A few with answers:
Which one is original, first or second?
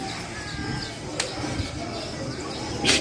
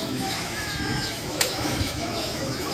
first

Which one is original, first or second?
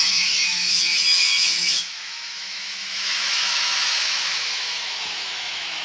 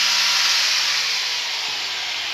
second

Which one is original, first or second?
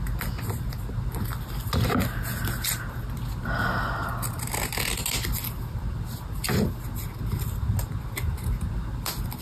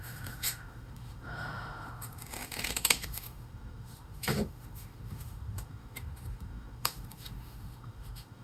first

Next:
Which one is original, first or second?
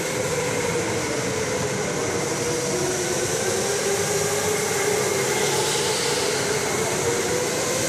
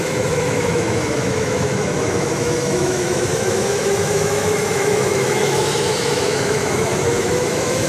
first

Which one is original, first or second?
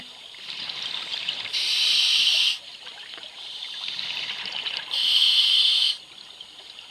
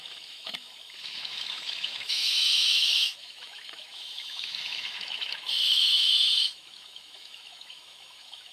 first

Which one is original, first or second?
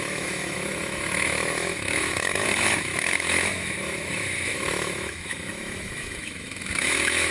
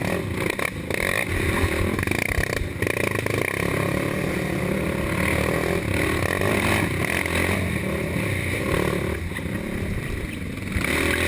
second